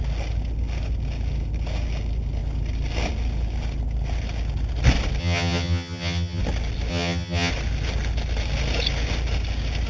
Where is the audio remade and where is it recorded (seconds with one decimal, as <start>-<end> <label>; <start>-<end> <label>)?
0.0-5.2 recorded; 5.2-6.4 remade; 6.4-6.9 recorded; 6.9-7.5 remade; 7.5-9.9 recorded